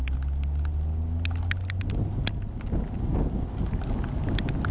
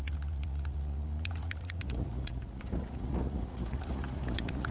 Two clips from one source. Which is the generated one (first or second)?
second